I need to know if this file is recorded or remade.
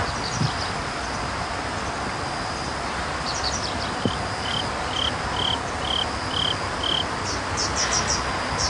recorded